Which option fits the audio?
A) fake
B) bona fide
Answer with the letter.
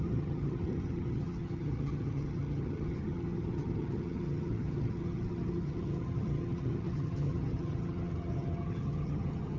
A